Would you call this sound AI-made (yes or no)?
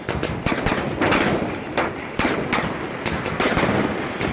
no